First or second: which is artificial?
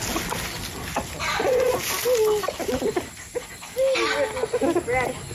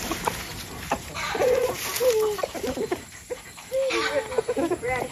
second